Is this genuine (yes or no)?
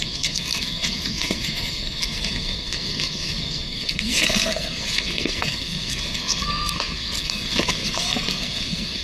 no